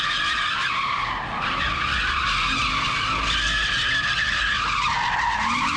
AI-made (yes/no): no